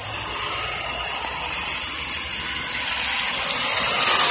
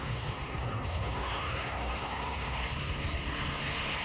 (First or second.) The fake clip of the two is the second